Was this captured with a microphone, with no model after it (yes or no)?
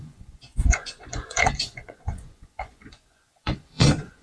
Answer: no